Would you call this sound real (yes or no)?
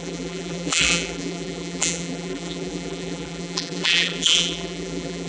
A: no